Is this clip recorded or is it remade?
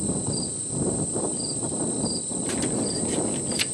recorded